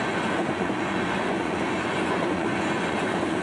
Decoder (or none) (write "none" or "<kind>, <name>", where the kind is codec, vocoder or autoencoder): vocoder, Vocos